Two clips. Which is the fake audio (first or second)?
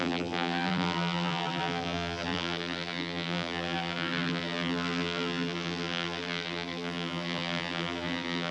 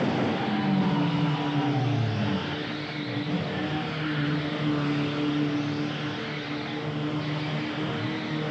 first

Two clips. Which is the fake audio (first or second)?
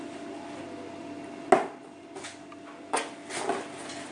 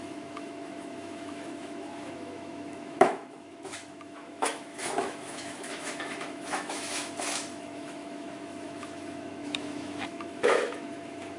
second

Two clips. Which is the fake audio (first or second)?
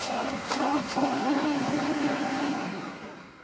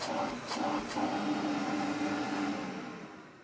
first